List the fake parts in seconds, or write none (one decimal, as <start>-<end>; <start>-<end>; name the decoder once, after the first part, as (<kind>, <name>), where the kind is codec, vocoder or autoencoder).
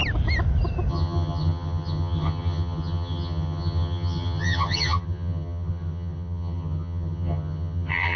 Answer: 0.9-8.2 (vocoder, HiFi-GAN)